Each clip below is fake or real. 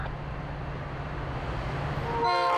real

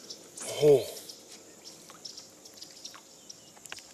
real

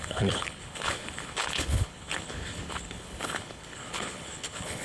fake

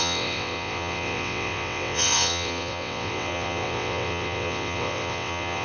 fake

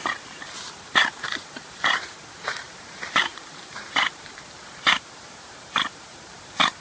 fake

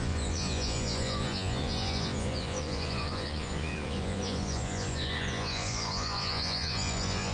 fake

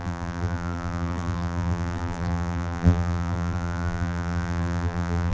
fake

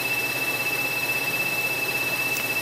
fake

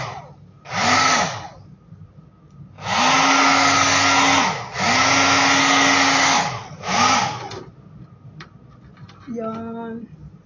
real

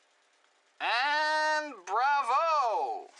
real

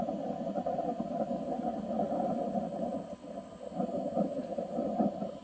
real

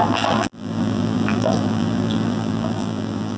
fake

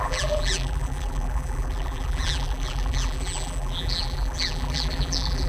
fake